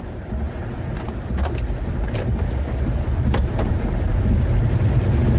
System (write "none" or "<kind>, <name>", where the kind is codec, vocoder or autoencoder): none